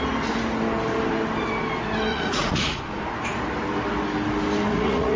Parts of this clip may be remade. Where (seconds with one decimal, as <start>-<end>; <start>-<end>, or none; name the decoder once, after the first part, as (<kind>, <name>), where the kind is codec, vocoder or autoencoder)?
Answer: 2.1-2.8 (vocoder, Vocos); 4.7-5.2